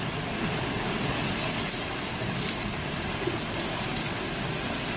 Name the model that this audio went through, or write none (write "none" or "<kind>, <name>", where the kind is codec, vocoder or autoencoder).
none